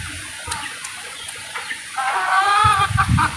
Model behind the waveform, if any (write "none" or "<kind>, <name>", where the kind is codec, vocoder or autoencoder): vocoder, Vocos